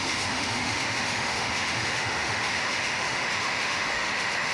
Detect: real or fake fake